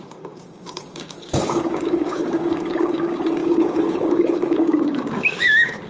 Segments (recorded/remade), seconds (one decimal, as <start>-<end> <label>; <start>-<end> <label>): 0.0-5.9 remade